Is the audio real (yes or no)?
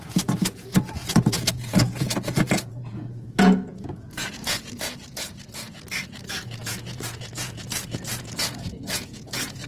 no